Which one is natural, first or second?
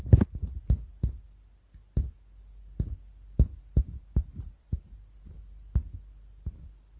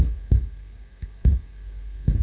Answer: first